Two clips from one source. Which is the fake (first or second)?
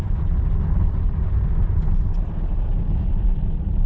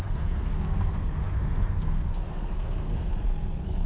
second